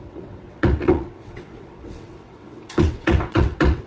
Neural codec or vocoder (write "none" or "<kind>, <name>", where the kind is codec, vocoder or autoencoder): vocoder, WaveNeXt